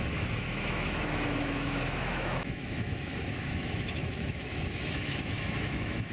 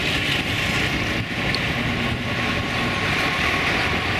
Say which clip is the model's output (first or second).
first